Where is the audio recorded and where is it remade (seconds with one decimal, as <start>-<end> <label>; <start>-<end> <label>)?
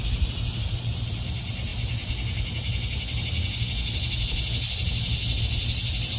0.0-6.2 recorded